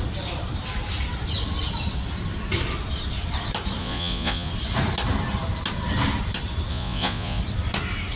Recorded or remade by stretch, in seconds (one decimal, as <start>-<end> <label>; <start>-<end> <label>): 0.0-3.8 recorded; 3.8-4.5 remade; 4.5-6.7 recorded; 6.7-7.4 remade; 7.4-8.2 recorded